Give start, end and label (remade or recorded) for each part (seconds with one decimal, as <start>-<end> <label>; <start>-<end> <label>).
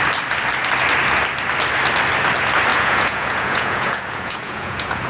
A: 0.0-2.7 recorded; 2.7-5.1 remade